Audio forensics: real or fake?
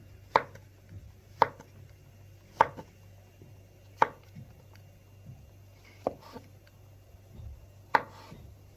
real